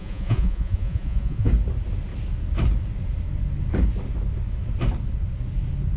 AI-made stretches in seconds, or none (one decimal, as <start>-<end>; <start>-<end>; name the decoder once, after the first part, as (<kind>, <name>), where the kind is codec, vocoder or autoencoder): 0.0-1.5 (vocoder, Vocos)